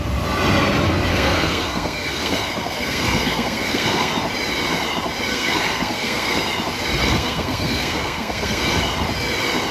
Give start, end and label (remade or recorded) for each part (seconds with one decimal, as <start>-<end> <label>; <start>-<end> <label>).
0.0-1.1 recorded; 1.1-4.1 remade; 4.1-5.3 recorded; 5.3-6.5 remade; 6.5-7.0 recorded; 7.0-8.6 remade; 8.6-9.7 recorded